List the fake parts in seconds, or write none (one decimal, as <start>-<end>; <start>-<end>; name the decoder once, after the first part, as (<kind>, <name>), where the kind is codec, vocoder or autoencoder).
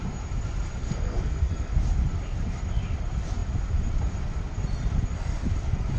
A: 0.8-1.7 (codec, SNAC)